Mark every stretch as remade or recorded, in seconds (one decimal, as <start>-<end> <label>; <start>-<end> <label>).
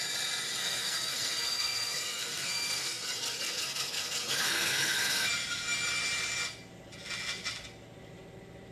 0.0-0.6 recorded; 0.6-5.3 remade; 5.3-8.7 recorded